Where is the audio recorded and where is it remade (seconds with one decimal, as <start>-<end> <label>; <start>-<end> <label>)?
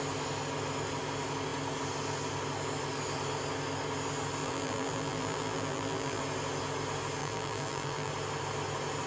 0.0-4.4 recorded; 4.4-6.2 remade; 6.2-7.2 recorded; 7.2-8.1 remade; 8.1-9.1 recorded